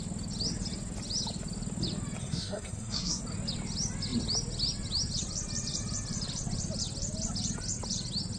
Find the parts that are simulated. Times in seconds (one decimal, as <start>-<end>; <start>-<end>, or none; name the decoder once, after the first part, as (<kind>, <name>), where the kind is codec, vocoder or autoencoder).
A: 2.2-3.2 (codec, SNAC)